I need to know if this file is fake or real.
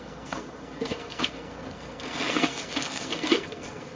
fake